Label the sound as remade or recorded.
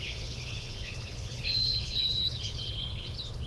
remade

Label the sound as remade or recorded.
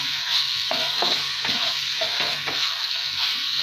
remade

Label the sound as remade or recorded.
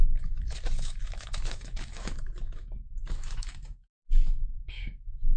remade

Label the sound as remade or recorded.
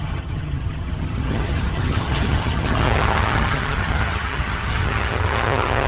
remade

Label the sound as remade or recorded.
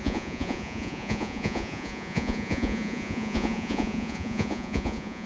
remade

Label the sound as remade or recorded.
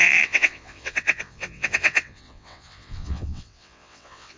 remade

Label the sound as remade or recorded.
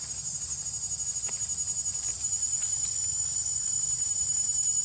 recorded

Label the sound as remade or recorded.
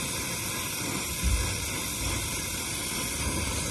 recorded